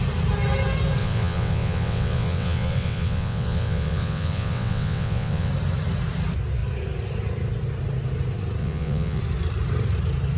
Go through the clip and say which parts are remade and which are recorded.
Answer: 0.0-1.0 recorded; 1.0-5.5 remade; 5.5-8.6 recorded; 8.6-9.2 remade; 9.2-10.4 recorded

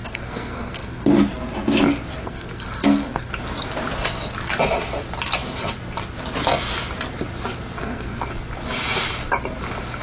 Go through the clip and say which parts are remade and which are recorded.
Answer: 0.0-1.2 remade; 1.2-2.2 recorded; 2.2-3.3 remade; 3.3-7.8 recorded; 7.8-8.3 remade; 8.3-10.0 recorded

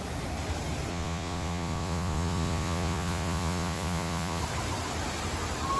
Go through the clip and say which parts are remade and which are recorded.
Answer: 0.0-0.9 recorded; 0.9-4.4 remade; 4.4-5.8 recorded

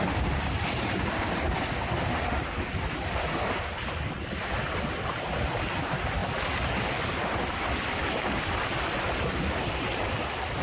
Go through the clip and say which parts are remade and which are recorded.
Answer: 0.0-10.6 recorded

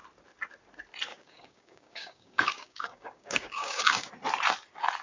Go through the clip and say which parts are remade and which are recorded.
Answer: 0.0-1.1 recorded; 1.1-4.1 remade; 4.1-5.0 recorded

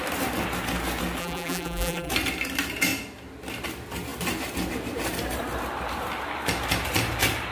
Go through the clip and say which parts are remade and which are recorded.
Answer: 0.0-1.2 recorded; 1.2-2.1 remade; 2.1-7.5 recorded

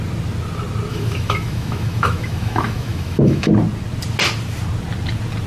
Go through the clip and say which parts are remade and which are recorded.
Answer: 0.0-0.9 recorded; 0.9-3.5 remade; 3.5-5.5 recorded